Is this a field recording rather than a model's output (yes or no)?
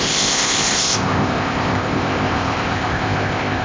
no